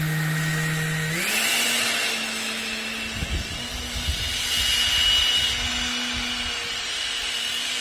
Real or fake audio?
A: real